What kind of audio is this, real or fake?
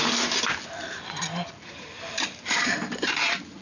fake